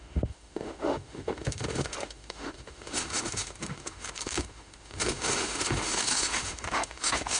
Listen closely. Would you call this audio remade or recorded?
remade